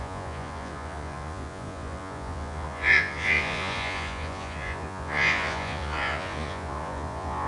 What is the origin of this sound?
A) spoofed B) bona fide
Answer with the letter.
A